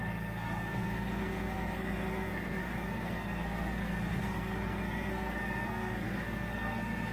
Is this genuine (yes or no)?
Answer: no